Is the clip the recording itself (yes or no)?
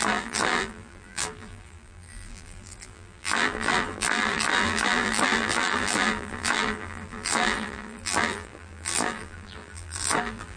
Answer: no